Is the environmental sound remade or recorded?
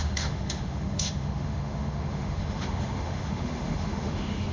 remade